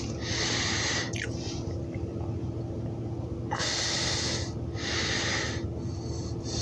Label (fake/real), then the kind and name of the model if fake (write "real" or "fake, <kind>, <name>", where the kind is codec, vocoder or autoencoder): real